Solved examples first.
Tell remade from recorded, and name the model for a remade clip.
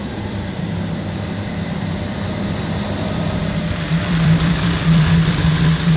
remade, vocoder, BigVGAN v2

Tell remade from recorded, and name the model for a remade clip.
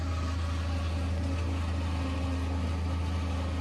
recorded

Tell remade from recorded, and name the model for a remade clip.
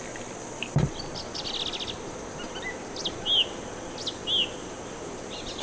recorded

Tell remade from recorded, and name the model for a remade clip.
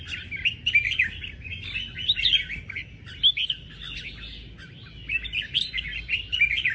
recorded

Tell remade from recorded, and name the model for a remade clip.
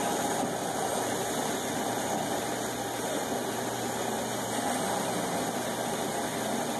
recorded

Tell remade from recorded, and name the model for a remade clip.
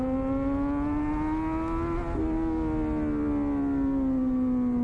recorded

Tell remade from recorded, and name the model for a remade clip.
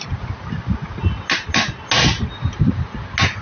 recorded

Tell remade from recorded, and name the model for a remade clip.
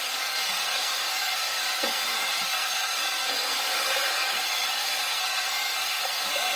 remade, codec, SNAC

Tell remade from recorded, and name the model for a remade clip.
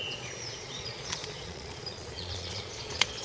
remade, vocoder, Vocos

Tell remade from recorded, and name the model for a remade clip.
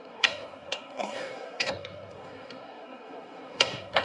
remade, codec, SNAC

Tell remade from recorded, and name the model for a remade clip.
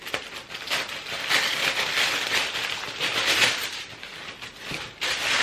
recorded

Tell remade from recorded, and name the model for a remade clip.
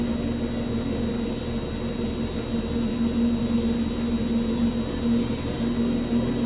recorded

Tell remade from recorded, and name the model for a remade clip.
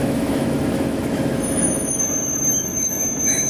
remade, autoencoder, DAC-VAE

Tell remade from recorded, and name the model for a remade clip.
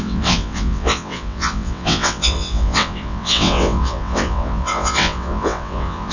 remade, vocoder, WaveNeXt